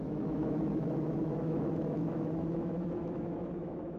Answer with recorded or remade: remade